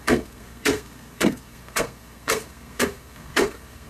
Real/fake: fake